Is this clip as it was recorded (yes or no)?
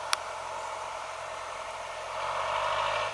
yes